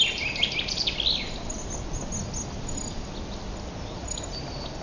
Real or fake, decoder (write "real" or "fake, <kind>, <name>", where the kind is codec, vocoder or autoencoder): real